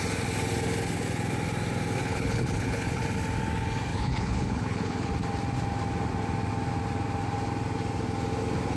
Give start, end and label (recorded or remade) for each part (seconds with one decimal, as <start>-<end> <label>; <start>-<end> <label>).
0.0-2.0 recorded; 2.0-3.0 remade; 3.0-3.9 recorded; 3.9-5.1 remade; 5.1-8.8 recorded